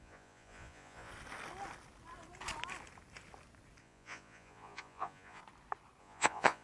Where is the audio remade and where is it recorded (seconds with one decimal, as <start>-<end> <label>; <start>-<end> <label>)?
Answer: 0.0-1.1 remade; 1.1-3.8 recorded; 3.8-5.4 remade; 5.4-6.0 recorded; 6.0-6.6 remade